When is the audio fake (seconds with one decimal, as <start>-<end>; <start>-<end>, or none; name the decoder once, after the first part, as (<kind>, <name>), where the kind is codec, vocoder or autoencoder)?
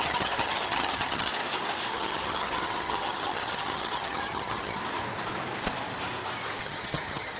0.0-1.3 (vocoder, HiFi-GAN); 1.9-4.8; 6.6-7.4